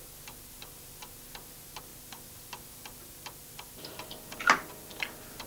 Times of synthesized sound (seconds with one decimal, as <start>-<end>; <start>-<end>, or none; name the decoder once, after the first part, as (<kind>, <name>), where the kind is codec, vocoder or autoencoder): none